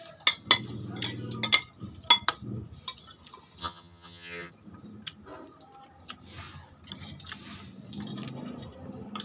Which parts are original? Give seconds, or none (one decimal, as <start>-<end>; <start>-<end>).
0.0-3.6; 4.5-9.2